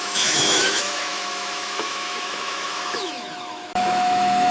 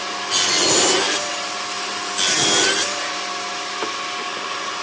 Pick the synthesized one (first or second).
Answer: first